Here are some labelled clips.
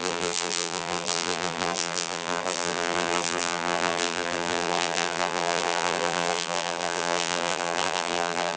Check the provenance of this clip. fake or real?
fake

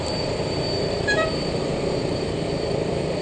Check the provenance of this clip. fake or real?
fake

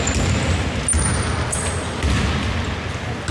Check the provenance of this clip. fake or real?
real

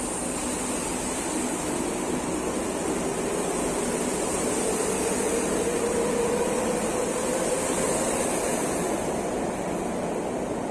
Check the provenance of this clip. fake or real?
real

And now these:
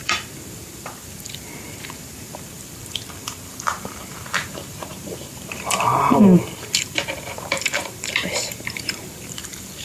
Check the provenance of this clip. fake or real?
fake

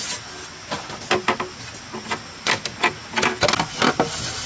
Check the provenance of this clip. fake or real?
real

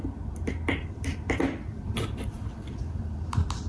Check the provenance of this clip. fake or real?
fake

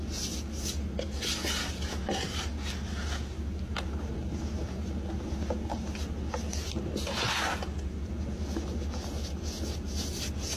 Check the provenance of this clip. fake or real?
real